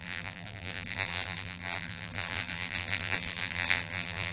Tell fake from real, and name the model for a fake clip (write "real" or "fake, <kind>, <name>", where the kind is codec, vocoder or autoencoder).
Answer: fake, vocoder, BigVGAN v2